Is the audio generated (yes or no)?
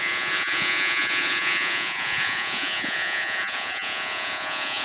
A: yes